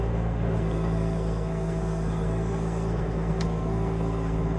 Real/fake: fake